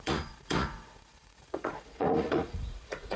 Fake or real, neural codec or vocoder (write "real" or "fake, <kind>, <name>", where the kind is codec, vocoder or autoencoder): fake, vocoder, Vocos